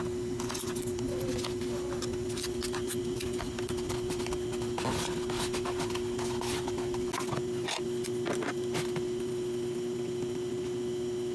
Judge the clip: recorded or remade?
recorded